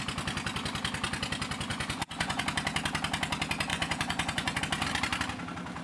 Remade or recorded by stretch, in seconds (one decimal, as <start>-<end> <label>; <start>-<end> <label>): 0.0-1.7 recorded; 1.7-2.4 remade; 2.4-3.7 recorded; 3.7-4.6 remade; 4.6-5.8 recorded